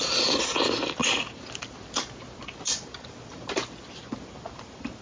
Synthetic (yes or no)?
no